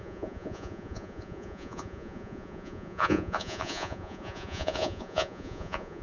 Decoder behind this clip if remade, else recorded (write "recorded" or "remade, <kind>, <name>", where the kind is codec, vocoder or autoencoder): remade, vocoder, Vocos